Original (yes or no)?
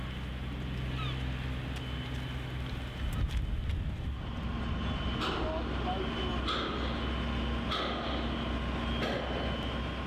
yes